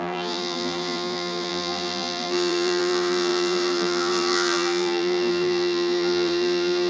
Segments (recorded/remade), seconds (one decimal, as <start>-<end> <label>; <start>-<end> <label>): 0.0-6.9 remade